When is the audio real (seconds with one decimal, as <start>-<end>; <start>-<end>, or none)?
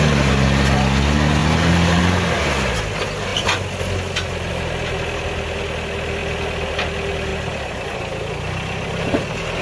0.0-1.4; 2.0-7.3; 8.0-9.6